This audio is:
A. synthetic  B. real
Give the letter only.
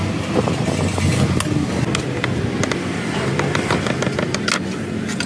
B